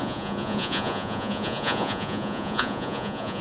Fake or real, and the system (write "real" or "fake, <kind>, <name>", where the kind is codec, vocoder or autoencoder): fake, vocoder, Vocos